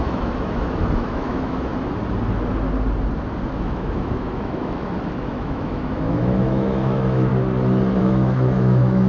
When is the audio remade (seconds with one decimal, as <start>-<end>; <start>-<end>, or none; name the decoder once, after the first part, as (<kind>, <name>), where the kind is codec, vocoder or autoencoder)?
0.0-1.7 (autoencoder, DAC-VAE); 3.5-7.3; 8.0-9.1